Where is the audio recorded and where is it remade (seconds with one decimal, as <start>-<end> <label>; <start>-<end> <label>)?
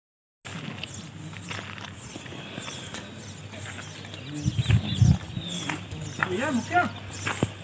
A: 0.0-7.6 recorded